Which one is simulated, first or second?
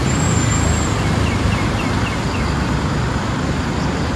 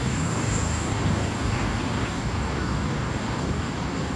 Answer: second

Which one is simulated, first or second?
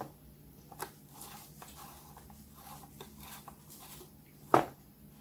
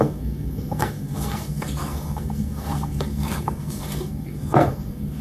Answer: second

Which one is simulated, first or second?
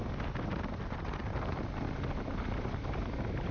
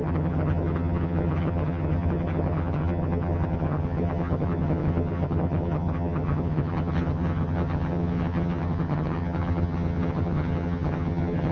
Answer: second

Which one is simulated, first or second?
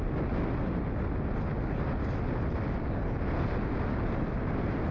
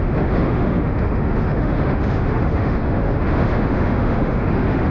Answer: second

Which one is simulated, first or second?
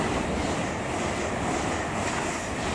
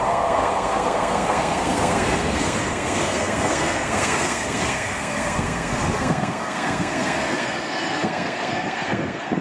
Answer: second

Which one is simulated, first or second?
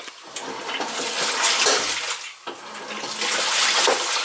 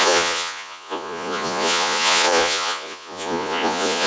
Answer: second